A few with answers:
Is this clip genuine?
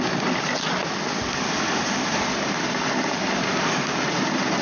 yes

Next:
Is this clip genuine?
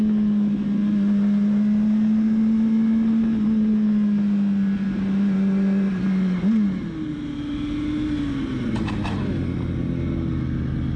yes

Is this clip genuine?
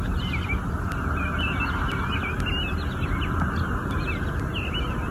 yes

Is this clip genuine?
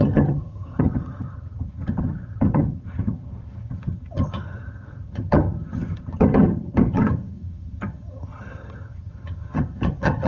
no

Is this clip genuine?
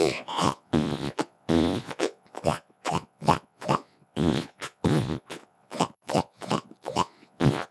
no